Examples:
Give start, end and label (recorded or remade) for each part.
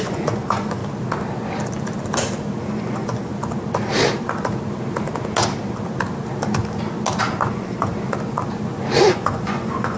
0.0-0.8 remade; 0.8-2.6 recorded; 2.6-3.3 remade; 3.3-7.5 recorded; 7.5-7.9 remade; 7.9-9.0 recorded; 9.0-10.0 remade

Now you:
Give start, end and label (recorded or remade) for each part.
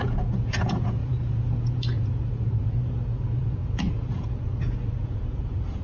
0.0-5.8 remade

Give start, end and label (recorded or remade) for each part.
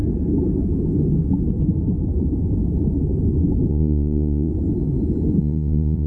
0.0-3.7 recorded; 3.7-4.5 remade; 4.5-5.4 recorded; 5.4-6.1 remade